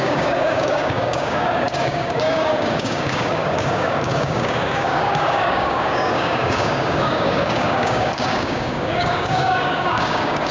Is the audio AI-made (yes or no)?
yes